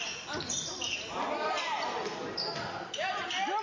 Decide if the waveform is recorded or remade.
recorded